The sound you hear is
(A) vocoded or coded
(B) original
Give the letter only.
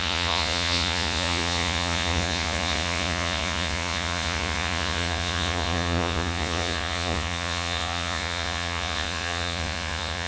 A